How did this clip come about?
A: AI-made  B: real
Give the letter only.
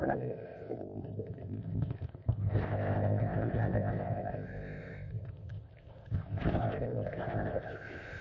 A